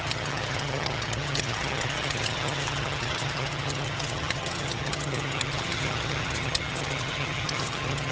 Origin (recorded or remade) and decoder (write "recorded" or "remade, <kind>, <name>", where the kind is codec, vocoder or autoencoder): remade, vocoder, HiFi-GAN